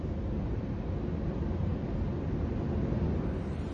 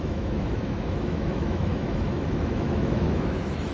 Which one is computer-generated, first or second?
second